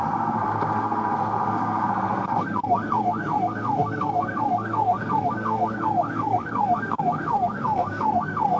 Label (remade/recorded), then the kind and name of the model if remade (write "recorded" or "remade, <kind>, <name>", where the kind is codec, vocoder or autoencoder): remade, codec, SNAC